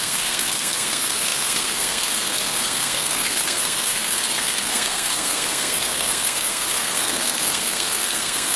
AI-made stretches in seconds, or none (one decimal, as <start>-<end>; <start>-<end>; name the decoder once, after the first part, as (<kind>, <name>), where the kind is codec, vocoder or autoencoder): 0.0-8.6 (codec, SNAC)

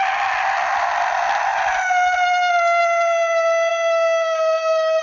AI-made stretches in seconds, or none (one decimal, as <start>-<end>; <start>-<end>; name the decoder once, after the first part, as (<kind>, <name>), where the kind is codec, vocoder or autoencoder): none

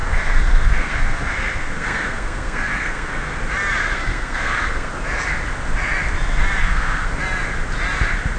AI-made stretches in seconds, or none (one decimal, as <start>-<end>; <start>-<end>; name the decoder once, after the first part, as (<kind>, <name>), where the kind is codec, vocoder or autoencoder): 0.0-3.4 (codec, SNAC); 3.8-4.9; 6.6-7.2

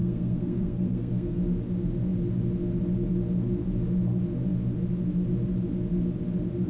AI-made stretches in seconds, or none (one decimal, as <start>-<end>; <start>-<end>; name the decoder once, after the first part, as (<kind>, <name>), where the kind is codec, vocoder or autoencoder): 0.0-1.4 (codec, SNAC)

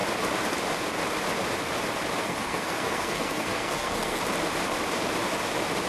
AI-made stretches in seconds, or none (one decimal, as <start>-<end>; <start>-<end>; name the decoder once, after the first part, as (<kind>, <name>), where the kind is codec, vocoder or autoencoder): 2.2-4.2 (codec, SNAC)